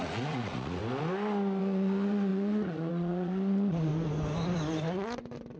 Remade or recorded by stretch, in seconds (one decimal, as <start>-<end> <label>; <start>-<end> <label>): 0.0-0.8 remade; 0.8-1.6 recorded; 1.6-3.9 remade; 3.9-5.6 recorded